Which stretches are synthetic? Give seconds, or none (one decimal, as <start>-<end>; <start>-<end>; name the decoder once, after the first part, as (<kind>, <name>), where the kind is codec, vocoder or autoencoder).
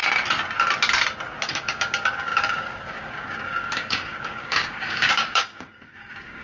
1.4-6.4 (codec, DAC)